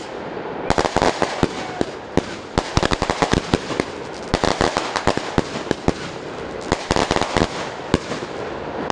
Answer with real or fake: real